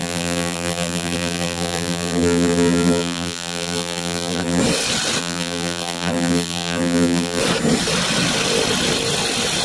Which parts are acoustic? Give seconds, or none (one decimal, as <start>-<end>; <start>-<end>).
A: 4.6-5.2; 7.4-9.6